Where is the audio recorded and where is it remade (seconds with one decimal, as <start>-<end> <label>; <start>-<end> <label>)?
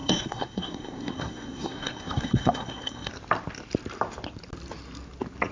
0.0-3.1 remade; 3.1-5.5 recorded